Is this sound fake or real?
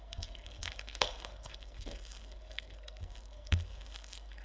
fake